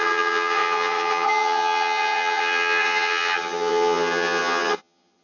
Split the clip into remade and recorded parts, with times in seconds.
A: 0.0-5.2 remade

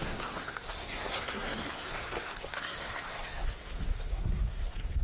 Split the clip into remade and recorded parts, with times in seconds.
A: 0.0-5.0 remade

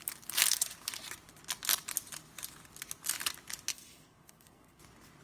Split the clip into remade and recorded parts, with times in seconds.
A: 0.0-3.7 recorded; 3.7-4.8 remade; 4.8-5.2 recorded

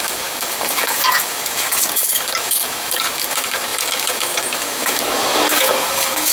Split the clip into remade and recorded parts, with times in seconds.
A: 0.0-6.3 remade

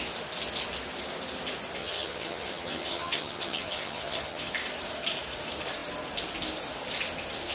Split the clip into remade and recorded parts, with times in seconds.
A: 0.0-1.8 recorded; 1.8-4.5 remade; 4.5-7.5 recorded

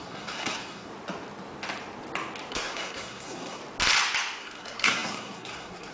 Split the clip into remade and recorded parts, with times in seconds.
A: 0.0-0.9 remade; 0.9-2.5 recorded; 2.5-3.6 remade; 3.6-4.4 recorded; 4.4-5.9 remade

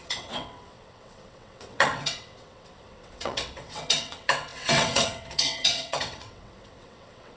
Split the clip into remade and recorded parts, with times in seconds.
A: 0.0-7.4 remade